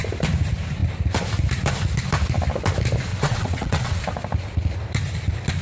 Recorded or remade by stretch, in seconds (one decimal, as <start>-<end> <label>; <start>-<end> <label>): 0.0-3.1 recorded; 3.1-4.0 remade; 4.0-5.6 recorded